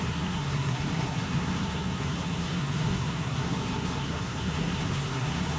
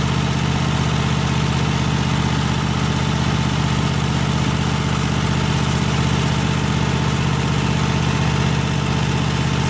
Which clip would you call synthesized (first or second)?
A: first